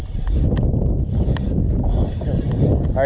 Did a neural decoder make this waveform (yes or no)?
no